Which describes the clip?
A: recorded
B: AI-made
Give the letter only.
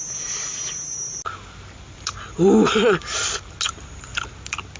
A